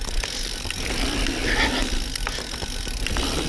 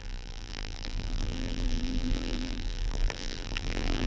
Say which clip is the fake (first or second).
second